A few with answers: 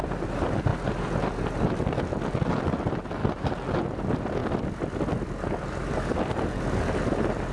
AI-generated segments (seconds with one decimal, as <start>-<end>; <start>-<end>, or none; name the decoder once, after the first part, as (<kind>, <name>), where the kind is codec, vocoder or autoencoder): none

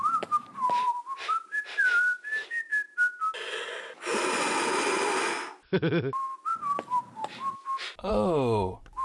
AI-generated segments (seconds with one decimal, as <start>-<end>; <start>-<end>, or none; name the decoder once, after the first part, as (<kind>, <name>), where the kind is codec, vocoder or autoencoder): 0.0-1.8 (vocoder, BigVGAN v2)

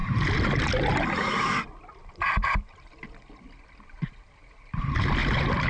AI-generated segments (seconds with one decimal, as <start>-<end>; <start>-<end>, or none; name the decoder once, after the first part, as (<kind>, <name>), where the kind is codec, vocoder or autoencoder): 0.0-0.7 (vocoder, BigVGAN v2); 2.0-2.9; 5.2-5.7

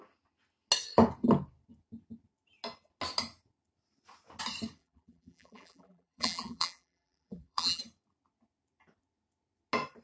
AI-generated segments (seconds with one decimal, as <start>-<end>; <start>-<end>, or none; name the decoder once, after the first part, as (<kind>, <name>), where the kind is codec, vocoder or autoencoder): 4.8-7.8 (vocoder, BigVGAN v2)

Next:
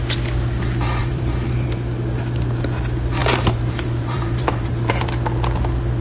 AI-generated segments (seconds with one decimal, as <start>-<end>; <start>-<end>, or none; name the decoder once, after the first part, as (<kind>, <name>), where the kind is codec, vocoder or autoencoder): 1.0-1.7 (vocoder, BigVGAN v2); 3.2-4.9

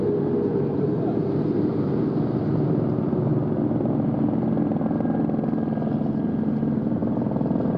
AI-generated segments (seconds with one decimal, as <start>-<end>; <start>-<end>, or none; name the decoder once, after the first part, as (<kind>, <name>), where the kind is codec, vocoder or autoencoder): 0.0-3.3 (vocoder, BigVGAN v2); 6.1-7.8